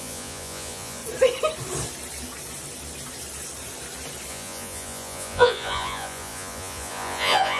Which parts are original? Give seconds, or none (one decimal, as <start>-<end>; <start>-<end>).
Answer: 1.0-4.3